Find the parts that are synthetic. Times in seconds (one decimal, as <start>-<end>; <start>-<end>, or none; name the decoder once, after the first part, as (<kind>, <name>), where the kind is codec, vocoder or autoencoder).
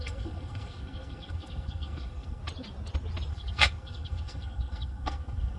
0.0-2.4 (codec, SNAC); 3.3-5.6